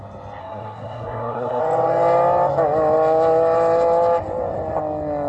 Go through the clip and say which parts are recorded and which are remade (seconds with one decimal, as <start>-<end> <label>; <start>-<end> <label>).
0.0-0.4 recorded; 0.4-1.6 remade; 1.6-5.3 recorded